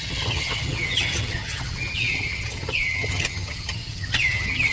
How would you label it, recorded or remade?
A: remade